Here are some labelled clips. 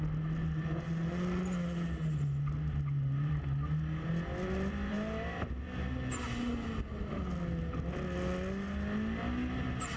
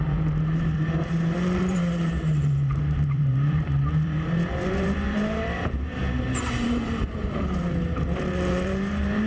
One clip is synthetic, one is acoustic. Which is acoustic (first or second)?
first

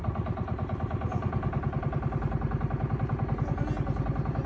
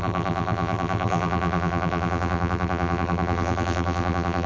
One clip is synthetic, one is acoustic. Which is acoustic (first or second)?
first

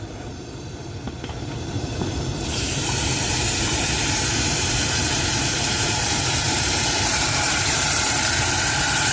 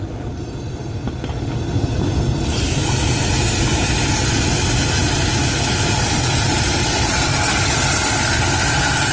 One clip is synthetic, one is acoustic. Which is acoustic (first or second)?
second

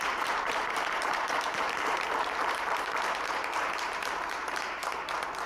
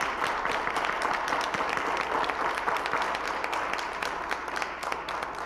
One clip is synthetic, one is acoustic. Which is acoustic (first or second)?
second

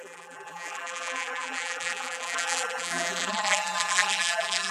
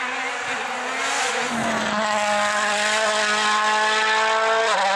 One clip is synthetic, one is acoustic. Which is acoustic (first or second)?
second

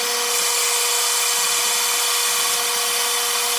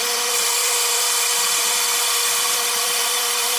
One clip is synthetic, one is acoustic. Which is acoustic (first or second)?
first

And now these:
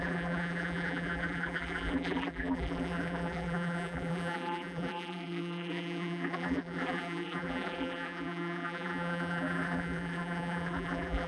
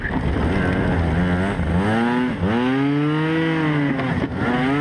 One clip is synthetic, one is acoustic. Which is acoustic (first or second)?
second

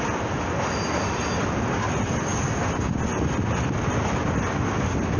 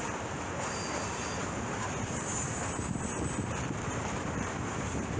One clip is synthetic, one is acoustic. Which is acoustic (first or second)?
first